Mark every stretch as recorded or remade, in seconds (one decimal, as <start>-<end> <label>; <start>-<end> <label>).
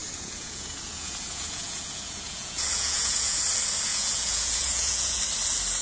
0.0-3.5 remade; 3.5-3.9 recorded; 3.9-5.2 remade; 5.2-5.8 recorded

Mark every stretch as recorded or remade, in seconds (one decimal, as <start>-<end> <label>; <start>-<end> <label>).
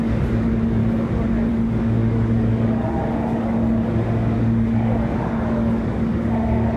0.0-0.8 remade; 0.8-1.5 recorded; 1.5-6.8 remade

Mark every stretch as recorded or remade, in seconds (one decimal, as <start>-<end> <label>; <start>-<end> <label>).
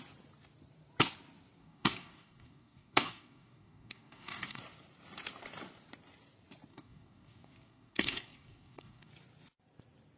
0.0-1.6 recorded; 1.6-4.6 remade; 4.6-6.7 recorded; 6.7-9.1 remade; 9.1-10.2 recorded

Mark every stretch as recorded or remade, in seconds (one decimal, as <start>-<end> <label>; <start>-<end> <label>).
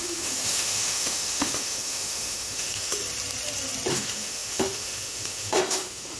0.0-3.0 remade; 3.0-3.9 recorded; 3.9-6.2 remade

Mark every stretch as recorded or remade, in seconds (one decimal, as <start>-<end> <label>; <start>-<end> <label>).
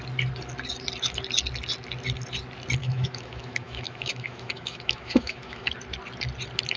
0.0-2.8 recorded; 2.8-5.7 remade; 5.7-6.8 recorded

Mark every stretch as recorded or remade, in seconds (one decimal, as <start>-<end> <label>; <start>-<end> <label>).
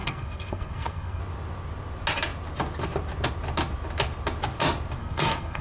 0.0-1.2 remade; 1.2-5.0 recorded; 5.0-5.6 remade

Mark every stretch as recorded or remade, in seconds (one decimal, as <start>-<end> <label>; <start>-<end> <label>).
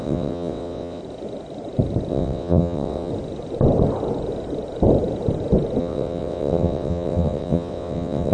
0.0-1.0 remade; 1.0-2.1 recorded; 2.1-3.1 remade; 3.1-5.8 recorded; 5.8-8.3 remade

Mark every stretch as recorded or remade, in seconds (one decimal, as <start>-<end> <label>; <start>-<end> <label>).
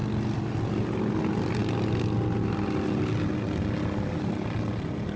0.0-5.2 recorded